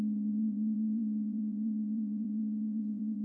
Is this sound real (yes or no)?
no